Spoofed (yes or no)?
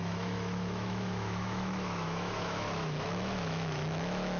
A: yes